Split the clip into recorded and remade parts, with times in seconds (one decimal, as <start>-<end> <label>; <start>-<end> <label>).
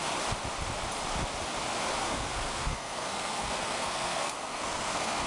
0.0-2.0 recorded; 2.0-5.3 remade